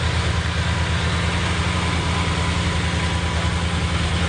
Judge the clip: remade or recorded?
recorded